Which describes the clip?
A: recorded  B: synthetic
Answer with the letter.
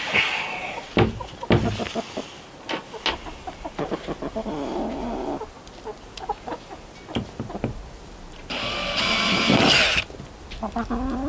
A